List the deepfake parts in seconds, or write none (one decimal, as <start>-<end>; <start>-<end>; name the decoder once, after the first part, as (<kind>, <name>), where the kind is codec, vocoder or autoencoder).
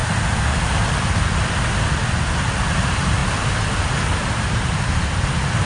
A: 2.7-3.2 (vocoder, BigVGAN v2); 4.3-5.7